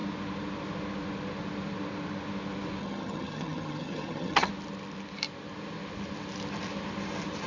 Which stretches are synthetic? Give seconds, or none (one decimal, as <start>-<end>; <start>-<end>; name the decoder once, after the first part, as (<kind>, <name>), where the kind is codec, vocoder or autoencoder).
2.8-4.5 (vocoder, HiFi-GAN)